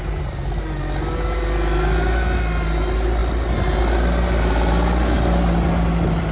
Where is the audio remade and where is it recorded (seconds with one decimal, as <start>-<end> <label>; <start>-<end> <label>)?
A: 0.0-6.3 recorded